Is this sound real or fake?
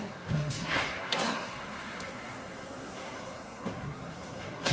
fake